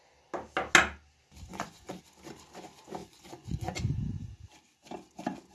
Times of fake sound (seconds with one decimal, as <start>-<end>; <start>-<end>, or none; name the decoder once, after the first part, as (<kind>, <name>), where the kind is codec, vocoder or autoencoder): 1.5-2.0 (vocoder, Vocos); 3.0-4.0

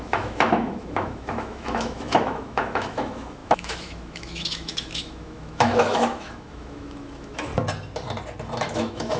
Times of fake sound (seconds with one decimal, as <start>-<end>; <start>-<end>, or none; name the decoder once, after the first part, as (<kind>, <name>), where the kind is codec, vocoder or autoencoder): 0.0-7.5 (autoencoder, DAC-VAE); 8.7-9.2

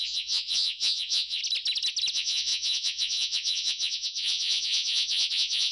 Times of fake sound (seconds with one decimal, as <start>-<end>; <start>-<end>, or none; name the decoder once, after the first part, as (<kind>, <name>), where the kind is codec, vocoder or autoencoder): 0.0-1.4 (vocoder, Vocos); 2.1-5.7

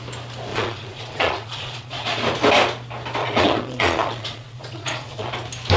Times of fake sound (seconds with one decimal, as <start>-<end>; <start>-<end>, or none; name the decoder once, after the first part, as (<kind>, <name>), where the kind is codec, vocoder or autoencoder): 0.5-2.2 (vocoder, Vocos); 3.2-5.3

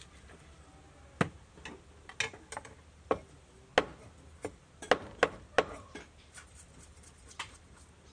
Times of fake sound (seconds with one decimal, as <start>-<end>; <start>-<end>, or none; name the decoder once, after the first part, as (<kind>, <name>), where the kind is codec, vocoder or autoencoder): none

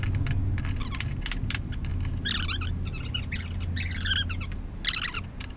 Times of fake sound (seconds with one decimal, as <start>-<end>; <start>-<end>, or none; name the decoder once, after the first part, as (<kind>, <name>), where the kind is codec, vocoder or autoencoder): none